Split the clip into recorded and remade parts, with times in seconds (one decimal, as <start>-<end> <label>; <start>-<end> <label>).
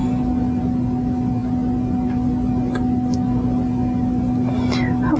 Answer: 0.0-5.2 recorded